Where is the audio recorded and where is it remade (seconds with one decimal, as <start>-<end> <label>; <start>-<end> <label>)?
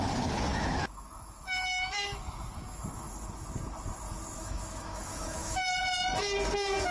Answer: 0.0-0.5 recorded; 0.5-3.1 remade; 3.1-4.4 recorded; 4.4-5.8 remade; 5.8-6.9 recorded